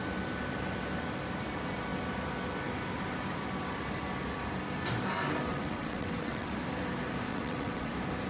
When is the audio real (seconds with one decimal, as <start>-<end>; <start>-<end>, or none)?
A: 0.0-5.5; 6.5-7.3; 7.9-8.3